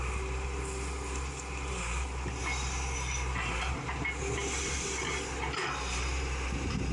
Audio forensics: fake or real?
real